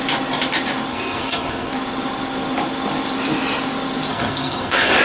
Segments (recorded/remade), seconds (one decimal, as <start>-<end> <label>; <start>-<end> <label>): 0.0-0.9 recorded; 0.9-1.7 remade; 1.7-4.1 recorded; 4.1-5.0 remade